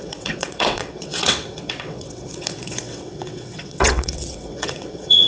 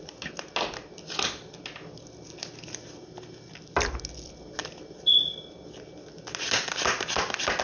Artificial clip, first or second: first